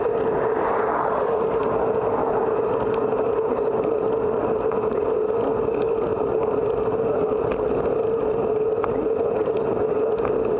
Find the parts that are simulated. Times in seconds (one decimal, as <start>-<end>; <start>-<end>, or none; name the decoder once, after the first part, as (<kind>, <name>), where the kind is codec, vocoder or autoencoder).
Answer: none